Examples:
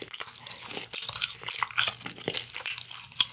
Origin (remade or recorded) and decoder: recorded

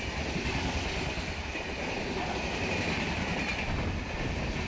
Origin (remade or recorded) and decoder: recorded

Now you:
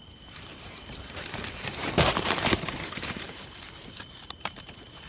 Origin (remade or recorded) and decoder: remade, vocoder, BigVGAN v2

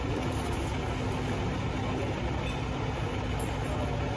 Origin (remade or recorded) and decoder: recorded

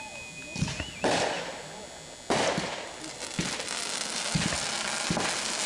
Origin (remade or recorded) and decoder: recorded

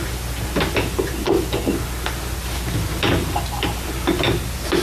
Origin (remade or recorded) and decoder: recorded